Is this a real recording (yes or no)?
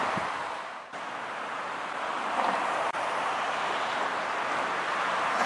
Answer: yes